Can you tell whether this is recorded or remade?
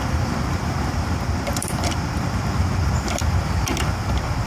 remade